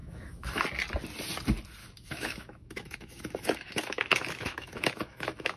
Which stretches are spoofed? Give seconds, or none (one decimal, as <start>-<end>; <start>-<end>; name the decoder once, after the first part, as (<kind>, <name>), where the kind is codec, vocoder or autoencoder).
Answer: 0.0-0.6 (autoencoder, DAC-VAE); 1.8-5.6